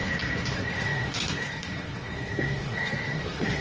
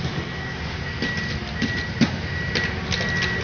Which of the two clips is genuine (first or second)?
second